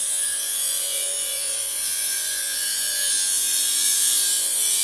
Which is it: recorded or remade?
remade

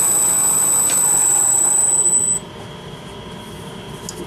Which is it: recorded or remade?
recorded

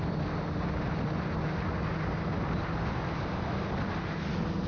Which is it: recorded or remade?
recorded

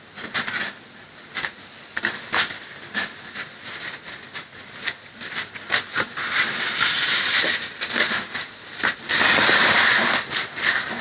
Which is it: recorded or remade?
recorded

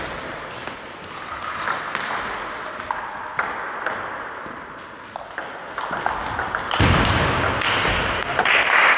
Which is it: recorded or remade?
recorded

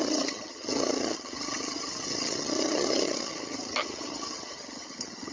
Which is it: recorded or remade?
remade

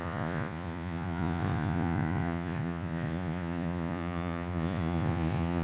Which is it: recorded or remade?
remade